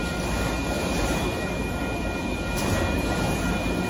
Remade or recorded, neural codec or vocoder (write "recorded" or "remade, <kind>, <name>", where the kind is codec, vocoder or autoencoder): remade, vocoder, BigVGAN v2